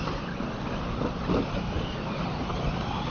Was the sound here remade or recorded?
recorded